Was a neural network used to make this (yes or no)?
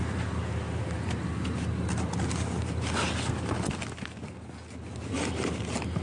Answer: no